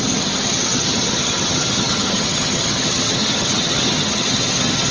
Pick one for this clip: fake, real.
fake